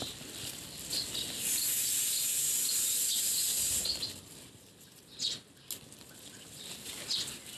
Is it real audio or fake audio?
real